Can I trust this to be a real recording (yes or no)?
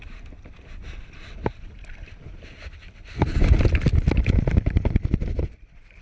yes